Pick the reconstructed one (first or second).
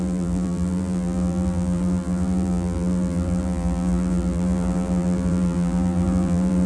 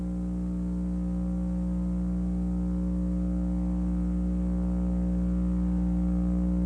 first